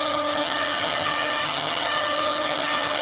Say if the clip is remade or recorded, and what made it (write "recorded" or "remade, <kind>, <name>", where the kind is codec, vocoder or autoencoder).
remade, vocoder, HiFi-GAN